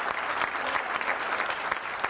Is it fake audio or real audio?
real